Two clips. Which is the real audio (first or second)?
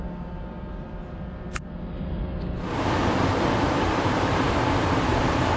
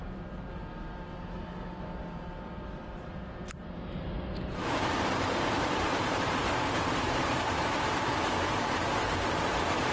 first